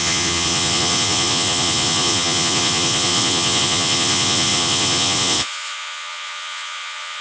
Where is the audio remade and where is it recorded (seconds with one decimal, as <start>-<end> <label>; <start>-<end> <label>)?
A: 0.0-7.2 remade